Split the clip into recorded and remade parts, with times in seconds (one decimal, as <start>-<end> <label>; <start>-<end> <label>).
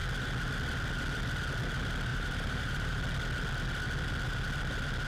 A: 0.0-2.1 recorded; 2.1-3.0 remade; 3.0-5.1 recorded